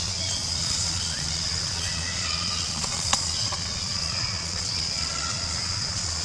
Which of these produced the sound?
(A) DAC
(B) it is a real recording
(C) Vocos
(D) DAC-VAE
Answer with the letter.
C